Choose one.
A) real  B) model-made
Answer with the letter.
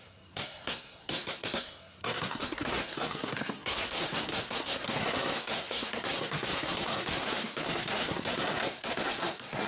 B